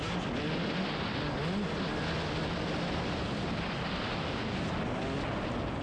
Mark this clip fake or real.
real